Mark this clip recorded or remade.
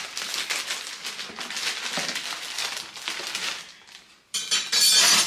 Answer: recorded